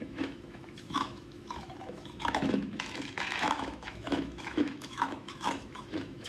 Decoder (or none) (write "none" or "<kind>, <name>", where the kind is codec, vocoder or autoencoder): autoencoder, DAC-VAE